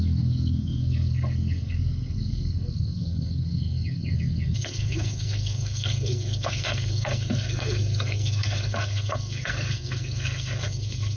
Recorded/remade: remade